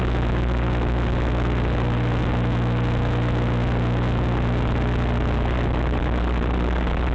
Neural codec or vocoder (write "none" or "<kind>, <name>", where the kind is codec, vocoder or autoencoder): none